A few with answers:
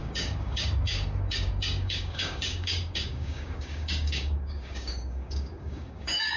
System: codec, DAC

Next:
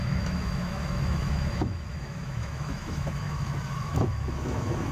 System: autoencoder, DAC-VAE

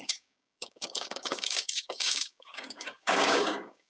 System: codec, DAC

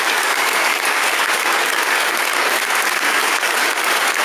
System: codec, DAC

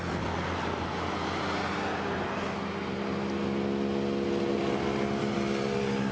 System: none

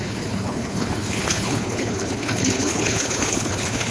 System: codec, HILCodec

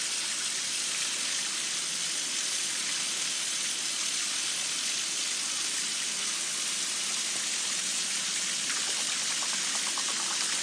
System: none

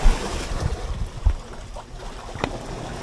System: none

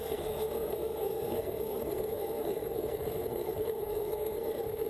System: codec, SNAC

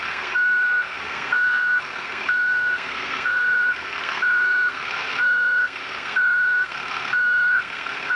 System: codec, SNAC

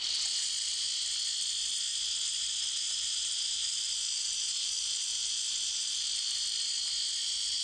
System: none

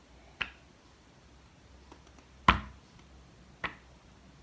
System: none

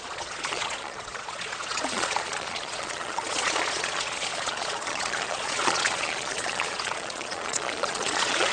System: vocoder, Vocos